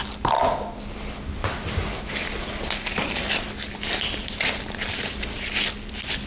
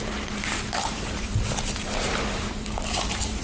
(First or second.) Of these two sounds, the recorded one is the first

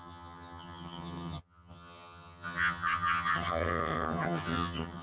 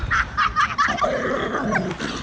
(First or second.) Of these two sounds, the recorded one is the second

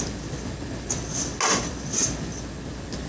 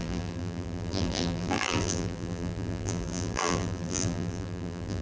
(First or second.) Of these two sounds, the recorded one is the first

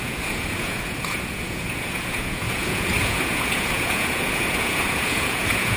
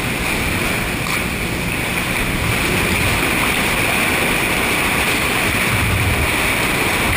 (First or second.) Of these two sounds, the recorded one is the second